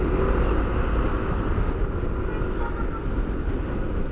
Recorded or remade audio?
recorded